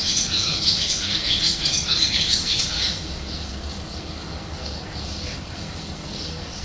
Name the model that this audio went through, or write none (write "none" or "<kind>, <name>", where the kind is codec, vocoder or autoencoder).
codec, SNAC